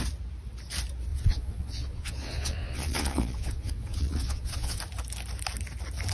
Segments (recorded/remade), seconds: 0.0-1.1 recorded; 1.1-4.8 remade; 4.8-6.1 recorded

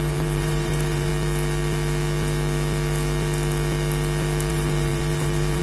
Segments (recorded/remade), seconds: 0.0-1.1 remade; 1.1-4.5 recorded; 4.5-5.6 remade

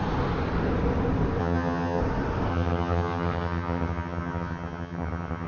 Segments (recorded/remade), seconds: 0.0-1.4 recorded; 1.4-2.0 remade; 2.0-2.5 recorded; 2.5-5.5 remade

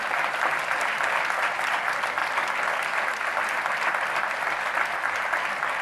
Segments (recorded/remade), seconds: 0.0-2.2 recorded; 2.2-4.9 remade; 4.9-5.8 recorded